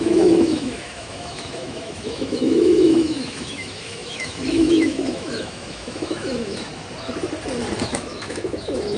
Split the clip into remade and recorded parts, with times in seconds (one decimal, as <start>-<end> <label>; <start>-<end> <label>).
0.0-6.7 remade; 6.7-7.8 recorded; 7.8-9.0 remade